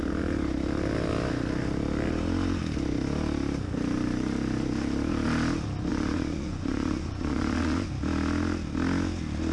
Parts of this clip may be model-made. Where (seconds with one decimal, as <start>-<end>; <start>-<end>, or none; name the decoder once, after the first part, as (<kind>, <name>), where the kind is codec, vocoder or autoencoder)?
5.9-7.9 (vocoder, Vocos)